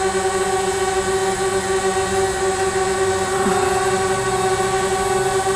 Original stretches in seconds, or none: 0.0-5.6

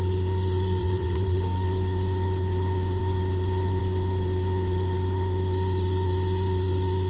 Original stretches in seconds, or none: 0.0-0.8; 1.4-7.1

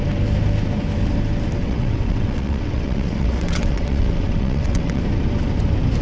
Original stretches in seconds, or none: 0.0-1.6; 5.0-6.0

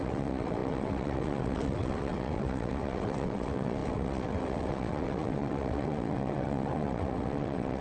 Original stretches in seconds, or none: none

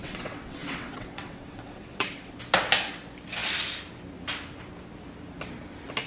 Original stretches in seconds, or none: 2.4-6.1

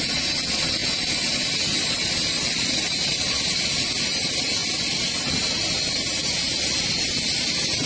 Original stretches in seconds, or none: 0.0-7.9